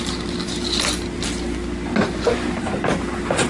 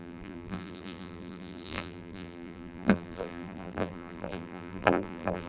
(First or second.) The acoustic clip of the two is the first